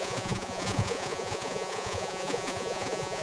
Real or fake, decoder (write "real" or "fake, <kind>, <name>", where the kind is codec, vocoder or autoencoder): fake, vocoder, Vocos